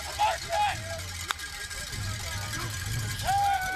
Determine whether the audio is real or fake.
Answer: real